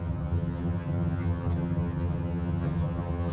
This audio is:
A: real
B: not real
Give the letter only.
B